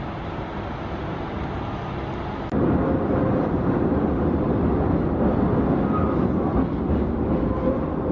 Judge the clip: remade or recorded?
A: recorded